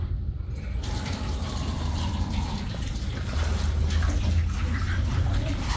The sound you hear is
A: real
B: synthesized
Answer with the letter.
B